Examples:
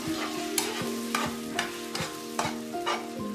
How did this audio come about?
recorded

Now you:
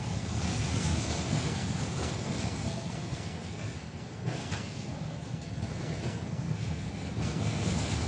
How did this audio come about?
remade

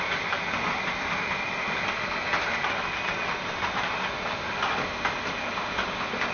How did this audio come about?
recorded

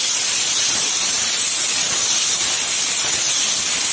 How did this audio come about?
recorded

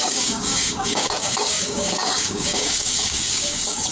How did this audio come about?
remade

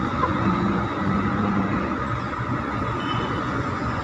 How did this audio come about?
remade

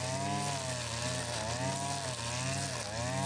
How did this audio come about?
recorded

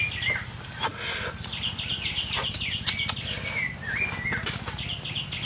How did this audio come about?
recorded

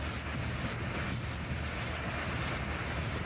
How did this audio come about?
recorded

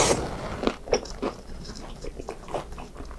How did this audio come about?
recorded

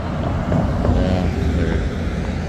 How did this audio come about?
recorded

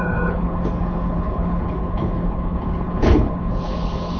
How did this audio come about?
remade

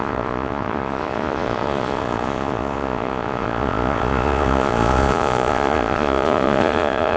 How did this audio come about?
remade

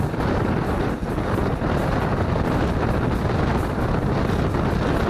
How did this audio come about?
recorded